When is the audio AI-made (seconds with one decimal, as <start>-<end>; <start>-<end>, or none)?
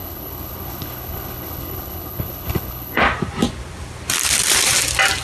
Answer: 0.0-3.0